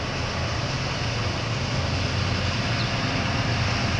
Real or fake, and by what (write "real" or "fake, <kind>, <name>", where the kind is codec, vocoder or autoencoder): real